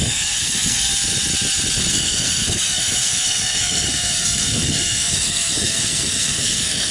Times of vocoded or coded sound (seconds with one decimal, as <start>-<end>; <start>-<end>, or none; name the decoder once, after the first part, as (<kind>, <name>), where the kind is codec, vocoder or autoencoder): 0.0-0.9 (codec, SNAC); 1.9-6.9